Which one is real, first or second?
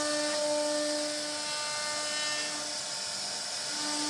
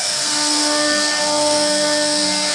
first